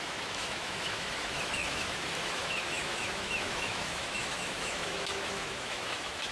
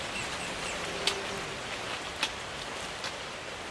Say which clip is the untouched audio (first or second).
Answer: second